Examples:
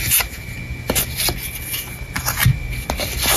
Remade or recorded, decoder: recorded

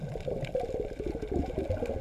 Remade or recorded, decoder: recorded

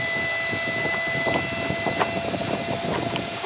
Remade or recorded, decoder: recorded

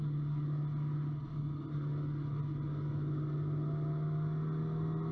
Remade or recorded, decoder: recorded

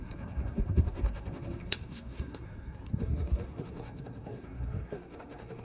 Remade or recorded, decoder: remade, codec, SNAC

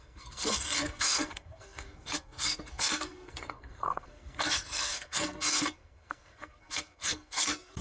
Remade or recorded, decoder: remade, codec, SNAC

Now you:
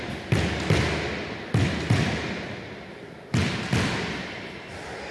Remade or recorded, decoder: recorded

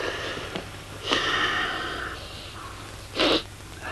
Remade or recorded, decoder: recorded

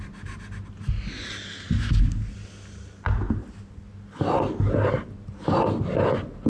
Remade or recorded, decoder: recorded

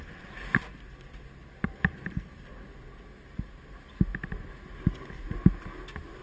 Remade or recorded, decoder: recorded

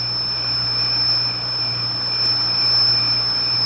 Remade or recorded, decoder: recorded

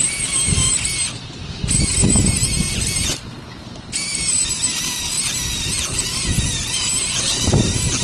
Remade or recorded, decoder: recorded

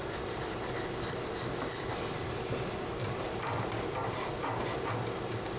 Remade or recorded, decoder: recorded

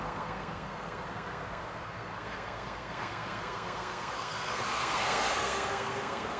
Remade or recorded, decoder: remade, codec, SNAC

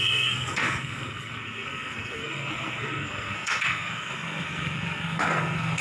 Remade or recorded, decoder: remade, codec, SNAC